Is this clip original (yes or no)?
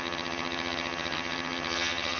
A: no